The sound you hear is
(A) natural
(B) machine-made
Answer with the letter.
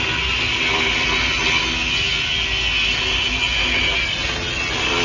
A